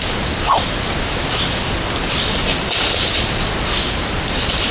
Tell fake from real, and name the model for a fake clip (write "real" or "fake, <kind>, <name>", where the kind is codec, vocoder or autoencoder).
real